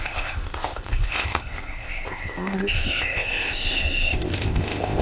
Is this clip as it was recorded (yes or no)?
no